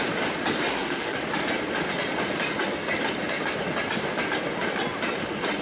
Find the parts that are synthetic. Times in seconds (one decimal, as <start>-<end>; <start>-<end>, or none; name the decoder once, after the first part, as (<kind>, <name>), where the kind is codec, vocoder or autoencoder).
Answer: 0.7-1.2 (codec, SNAC)